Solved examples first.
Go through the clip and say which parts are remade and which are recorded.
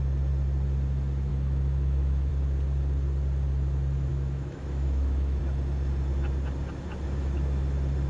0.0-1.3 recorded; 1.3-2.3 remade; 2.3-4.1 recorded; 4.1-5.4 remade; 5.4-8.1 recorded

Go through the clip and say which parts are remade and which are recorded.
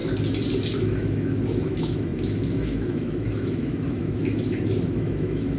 0.0-0.8 recorded; 0.8-5.6 remade